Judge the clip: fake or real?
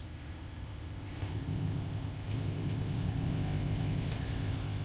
fake